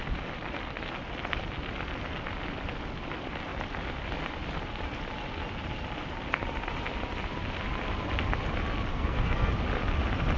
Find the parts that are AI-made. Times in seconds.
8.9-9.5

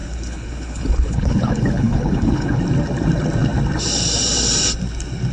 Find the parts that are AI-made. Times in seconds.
0.0-2.6

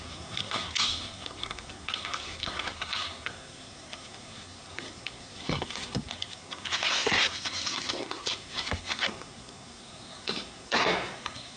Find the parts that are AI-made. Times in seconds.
0.0-11.6

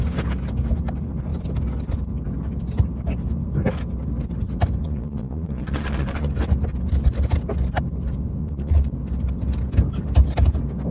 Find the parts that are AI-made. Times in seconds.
4.8-6.3; 8.4-8.9

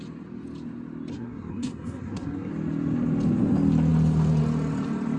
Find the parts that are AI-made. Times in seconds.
1.1-2.5